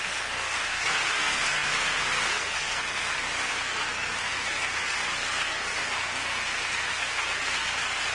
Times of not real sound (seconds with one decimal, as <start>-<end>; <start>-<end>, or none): 0.0-8.1